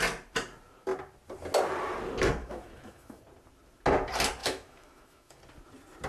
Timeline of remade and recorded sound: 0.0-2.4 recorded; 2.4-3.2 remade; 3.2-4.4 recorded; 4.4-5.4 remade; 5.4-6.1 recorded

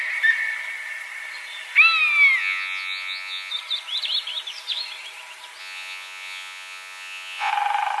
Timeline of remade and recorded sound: 0.0-2.4 recorded; 2.4-3.5 remade; 3.5-5.6 recorded; 5.6-7.5 remade; 7.5-8.0 recorded